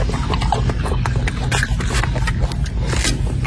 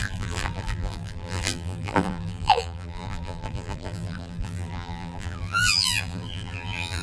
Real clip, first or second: first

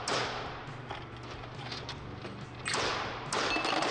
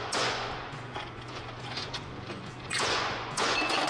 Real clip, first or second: first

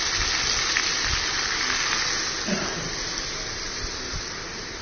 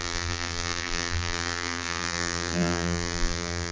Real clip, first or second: first